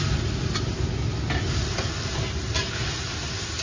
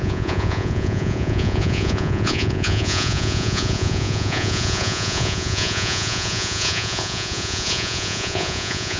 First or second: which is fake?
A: second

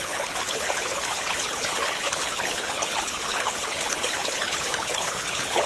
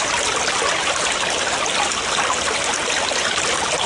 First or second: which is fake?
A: first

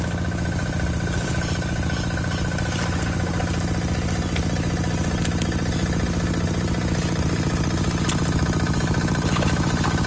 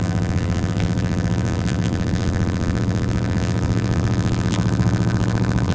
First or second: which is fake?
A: second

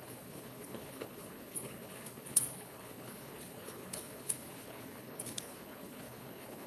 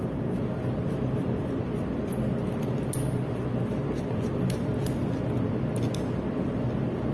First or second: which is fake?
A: first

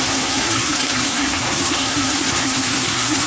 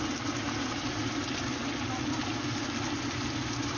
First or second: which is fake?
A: first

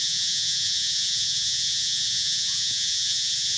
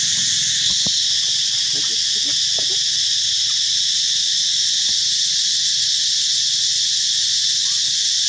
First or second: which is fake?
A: first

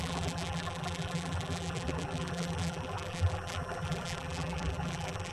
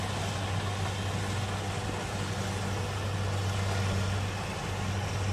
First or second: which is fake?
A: first